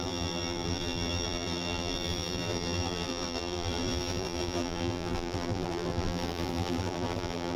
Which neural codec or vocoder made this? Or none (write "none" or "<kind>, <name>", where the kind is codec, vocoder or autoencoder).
vocoder, BigVGAN v2